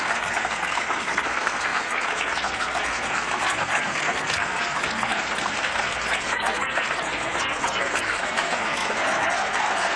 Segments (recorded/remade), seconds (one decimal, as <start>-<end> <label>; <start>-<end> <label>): 0.0-10.0 remade